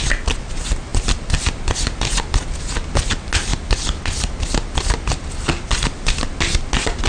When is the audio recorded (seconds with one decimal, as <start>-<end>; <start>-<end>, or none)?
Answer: 0.0-7.1